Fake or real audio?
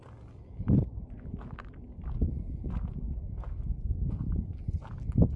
real